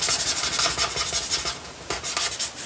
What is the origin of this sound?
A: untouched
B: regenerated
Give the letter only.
A